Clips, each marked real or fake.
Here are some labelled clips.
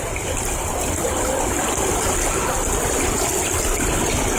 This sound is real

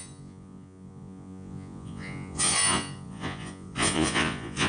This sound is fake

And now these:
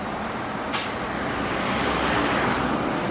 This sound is real